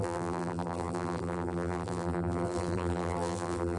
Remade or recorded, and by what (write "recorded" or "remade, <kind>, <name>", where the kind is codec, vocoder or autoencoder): remade, vocoder, BigVGAN v2